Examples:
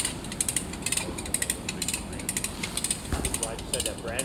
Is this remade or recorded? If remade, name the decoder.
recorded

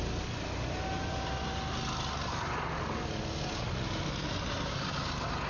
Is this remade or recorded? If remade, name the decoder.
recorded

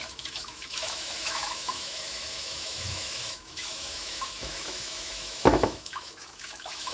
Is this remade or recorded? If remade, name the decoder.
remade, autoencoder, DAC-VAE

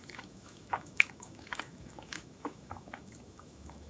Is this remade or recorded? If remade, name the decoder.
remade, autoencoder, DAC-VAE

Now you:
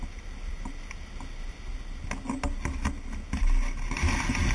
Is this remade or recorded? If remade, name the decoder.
recorded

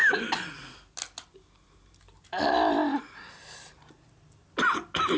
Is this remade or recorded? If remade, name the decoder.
recorded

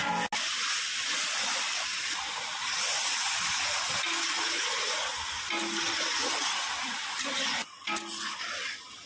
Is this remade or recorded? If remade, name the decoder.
recorded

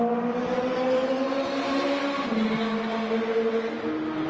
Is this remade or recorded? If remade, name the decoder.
recorded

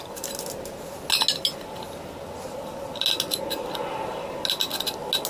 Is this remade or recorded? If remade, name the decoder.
recorded